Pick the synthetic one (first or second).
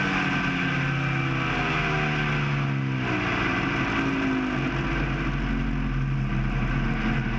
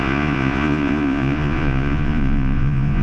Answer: second